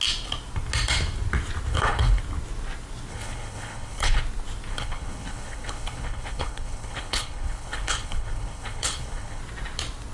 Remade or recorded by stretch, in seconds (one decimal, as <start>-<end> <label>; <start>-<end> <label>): 0.0-1.7 recorded; 1.7-2.2 remade; 2.2-3.1 recorded; 3.1-4.2 remade; 4.2-4.7 recorded; 4.7-9.4 remade; 9.4-10.1 recorded

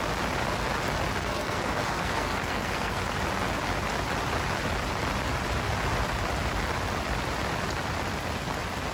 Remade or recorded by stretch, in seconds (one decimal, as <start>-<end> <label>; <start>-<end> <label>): 0.0-1.2 recorded; 1.2-3.0 remade; 3.0-8.9 recorded

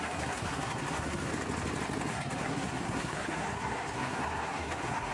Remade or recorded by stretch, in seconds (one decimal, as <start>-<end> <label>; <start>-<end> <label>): 0.0-1.3 remade; 1.3-2.1 recorded; 2.1-5.1 remade

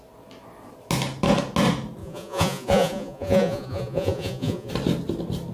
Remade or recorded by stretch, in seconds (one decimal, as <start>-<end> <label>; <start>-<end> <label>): 0.0-2.0 recorded; 2.0-4.7 remade; 4.7-5.5 recorded

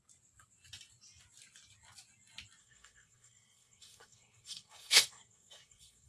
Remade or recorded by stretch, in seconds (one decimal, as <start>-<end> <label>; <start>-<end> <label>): 0.0-2.6 recorded; 2.6-6.1 remade

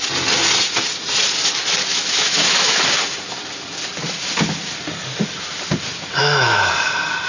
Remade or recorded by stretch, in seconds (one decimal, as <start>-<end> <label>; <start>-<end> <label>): 0.0-1.9 recorded; 1.9-2.8 remade; 2.8-6.2 recorded; 6.2-6.7 remade; 6.7-7.3 recorded